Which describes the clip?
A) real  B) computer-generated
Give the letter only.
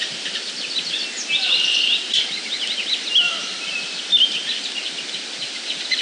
A